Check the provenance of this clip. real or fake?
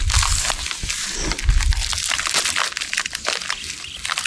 real